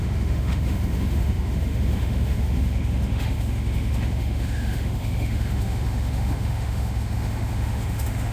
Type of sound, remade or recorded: remade